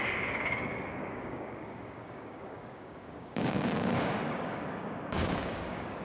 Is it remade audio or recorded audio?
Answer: remade